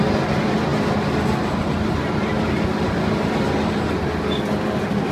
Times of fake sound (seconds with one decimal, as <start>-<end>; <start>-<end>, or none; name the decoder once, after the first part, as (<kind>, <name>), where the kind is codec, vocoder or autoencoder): none